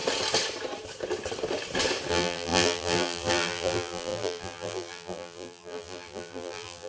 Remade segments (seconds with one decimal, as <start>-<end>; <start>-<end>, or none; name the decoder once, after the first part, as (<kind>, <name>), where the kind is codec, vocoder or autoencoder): 2.1-6.9 (vocoder, BigVGAN v2)